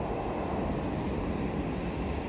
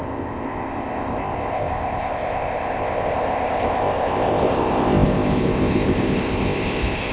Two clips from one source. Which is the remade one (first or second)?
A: second